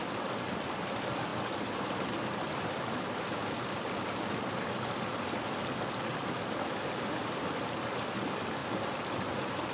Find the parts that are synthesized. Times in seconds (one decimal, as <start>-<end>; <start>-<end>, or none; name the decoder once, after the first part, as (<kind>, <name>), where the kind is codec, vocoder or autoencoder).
0.0-1.3 (vocoder, BigVGAN v2); 2.1-3.4; 4.5-8.6; 9.2-9.7